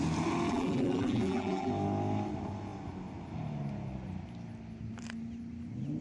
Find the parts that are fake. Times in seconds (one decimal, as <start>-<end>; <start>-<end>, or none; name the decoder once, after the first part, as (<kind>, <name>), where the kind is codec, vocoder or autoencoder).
0.5-1.7 (vocoder, BigVGAN v2)